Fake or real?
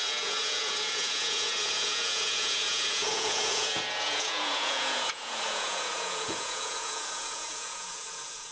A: fake